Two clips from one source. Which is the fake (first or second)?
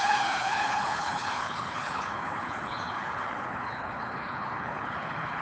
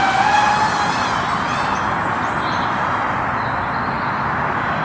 first